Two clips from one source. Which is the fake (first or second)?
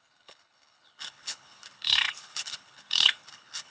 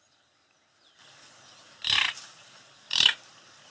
first